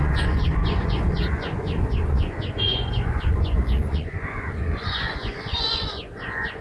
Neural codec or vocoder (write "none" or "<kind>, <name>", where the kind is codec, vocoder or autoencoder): vocoder, Vocos